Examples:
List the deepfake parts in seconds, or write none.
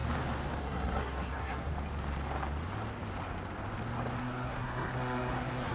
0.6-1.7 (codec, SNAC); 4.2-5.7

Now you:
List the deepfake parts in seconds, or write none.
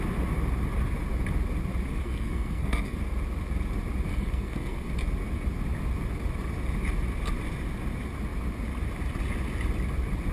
1.9-3.0 (codec, SNAC); 4.1-4.9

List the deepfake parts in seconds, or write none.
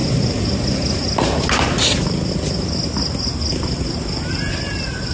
none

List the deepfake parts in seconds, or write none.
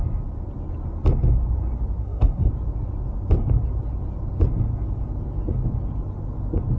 2.0-2.5 (codec, SNAC)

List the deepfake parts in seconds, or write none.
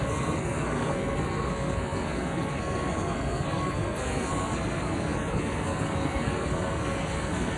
0.0-7.6 (codec, SNAC)